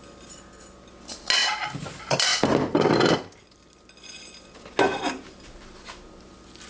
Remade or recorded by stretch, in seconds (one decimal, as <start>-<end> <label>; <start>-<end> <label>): 0.0-6.7 recorded